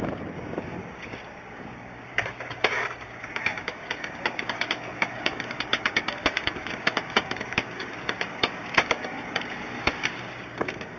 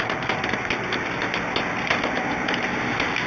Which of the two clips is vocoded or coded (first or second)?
first